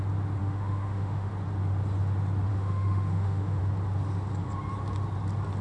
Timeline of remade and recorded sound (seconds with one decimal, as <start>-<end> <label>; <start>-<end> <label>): 0.0-0.4 recorded; 0.4-1.3 remade; 1.3-2.5 recorded; 2.5-3.6 remade; 3.6-5.6 recorded